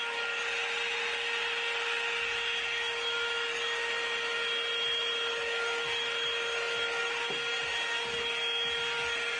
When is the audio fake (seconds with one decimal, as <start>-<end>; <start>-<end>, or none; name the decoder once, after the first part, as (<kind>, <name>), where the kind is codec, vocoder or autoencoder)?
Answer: none